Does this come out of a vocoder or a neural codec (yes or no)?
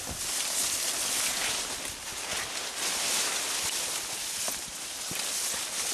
no